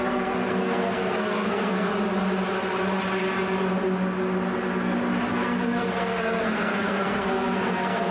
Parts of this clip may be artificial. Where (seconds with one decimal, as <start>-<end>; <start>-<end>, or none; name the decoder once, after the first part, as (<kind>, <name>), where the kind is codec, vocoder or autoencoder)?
0.0-1.9 (codec, SNAC); 5.3-8.1